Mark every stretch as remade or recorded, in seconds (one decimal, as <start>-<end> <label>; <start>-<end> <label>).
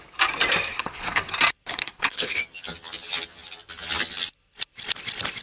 0.0-0.7 recorded; 0.7-1.2 remade; 1.2-1.7 recorded; 1.7-2.4 remade; 2.4-5.4 recorded